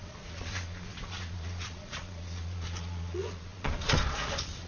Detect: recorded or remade remade